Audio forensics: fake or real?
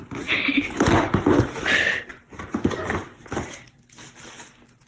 real